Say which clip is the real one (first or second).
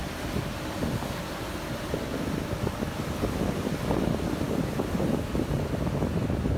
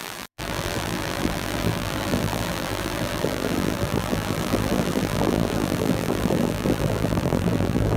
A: first